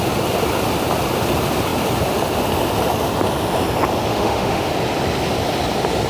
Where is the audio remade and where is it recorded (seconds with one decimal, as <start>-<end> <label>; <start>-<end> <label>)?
0.0-4.1 recorded; 4.1-4.7 remade; 4.7-6.1 recorded

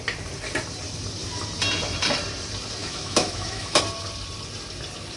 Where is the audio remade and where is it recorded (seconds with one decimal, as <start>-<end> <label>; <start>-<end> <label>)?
0.0-2.8 recorded; 2.8-3.8 remade; 3.8-5.2 recorded

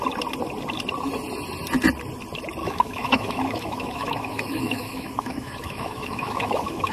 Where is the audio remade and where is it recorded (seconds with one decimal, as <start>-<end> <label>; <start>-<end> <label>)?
0.0-2.6 recorded; 2.6-6.9 remade

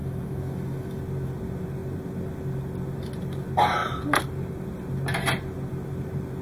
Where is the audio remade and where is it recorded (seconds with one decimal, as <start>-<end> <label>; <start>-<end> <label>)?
0.0-1.0 remade; 1.0-6.4 recorded

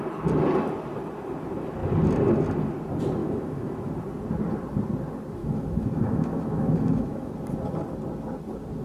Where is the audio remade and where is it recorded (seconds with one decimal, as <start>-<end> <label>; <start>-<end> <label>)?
0.0-3.2 recorded; 3.2-3.9 remade; 3.9-5.4 recorded; 5.4-7.3 remade; 7.3-8.8 recorded

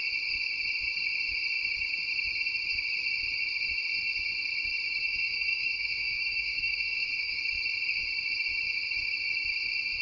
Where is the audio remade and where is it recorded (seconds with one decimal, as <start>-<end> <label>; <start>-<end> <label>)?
0.0-5.0 recorded; 5.0-7.4 remade; 7.4-10.0 recorded